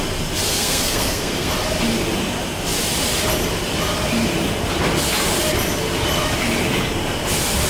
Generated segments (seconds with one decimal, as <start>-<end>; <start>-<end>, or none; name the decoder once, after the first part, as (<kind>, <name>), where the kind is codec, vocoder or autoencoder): 0.5-1.5 (codec, SNAC)